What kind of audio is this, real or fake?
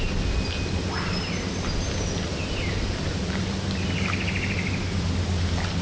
real